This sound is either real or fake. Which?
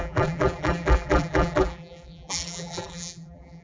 fake